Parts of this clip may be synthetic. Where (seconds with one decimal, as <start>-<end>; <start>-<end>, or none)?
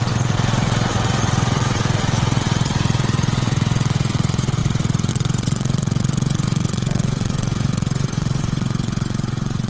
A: 0.0-9.7